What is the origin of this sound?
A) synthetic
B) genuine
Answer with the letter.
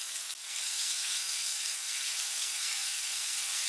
A